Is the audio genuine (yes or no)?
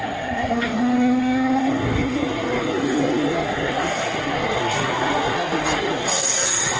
no